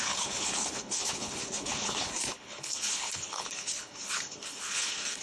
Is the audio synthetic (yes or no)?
yes